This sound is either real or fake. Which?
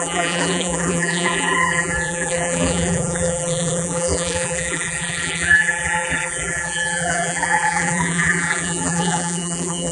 fake